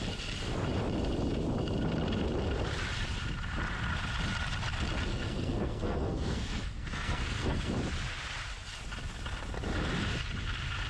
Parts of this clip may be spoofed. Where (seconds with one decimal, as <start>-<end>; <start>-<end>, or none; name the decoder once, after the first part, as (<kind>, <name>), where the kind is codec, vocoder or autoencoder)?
5.1-7.7 (codec, SNAC)